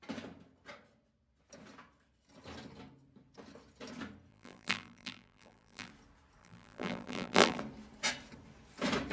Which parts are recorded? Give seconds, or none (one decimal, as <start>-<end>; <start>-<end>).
0.0-4.3; 5.9-6.4; 7.6-9.1